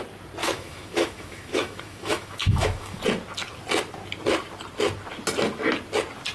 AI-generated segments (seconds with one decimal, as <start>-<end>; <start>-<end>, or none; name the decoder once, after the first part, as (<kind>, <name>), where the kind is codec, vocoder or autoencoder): 0.4-3.0 (autoencoder, DAC-VAE)